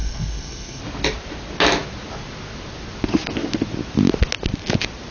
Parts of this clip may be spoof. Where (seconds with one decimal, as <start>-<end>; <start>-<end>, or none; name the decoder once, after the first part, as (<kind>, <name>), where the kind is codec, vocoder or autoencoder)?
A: 0.0-0.8 (codec, SNAC)